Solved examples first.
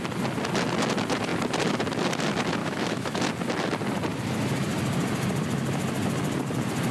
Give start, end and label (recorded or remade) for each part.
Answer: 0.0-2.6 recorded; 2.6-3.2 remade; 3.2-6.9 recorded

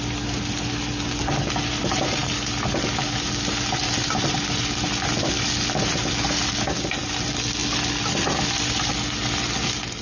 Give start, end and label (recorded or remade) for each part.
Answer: 0.0-10.0 recorded

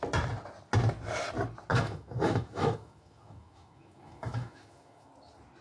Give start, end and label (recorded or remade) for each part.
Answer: 0.0-1.7 recorded; 1.7-5.1 remade; 5.1-5.6 recorded

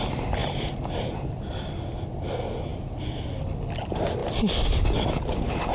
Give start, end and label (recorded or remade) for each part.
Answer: 0.0-5.7 recorded